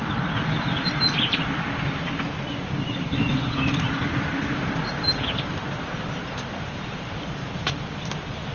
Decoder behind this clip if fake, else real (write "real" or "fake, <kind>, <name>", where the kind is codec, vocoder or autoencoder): fake, vocoder, BigVGAN v2